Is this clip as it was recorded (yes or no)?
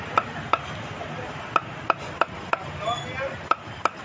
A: yes